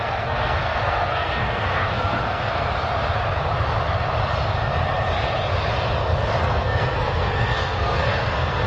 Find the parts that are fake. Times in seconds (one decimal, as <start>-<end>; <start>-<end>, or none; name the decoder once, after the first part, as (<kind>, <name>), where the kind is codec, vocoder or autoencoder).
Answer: 0.0-2.7 (codec, SNAC); 6.4-8.7